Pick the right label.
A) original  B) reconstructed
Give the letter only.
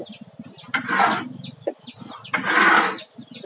A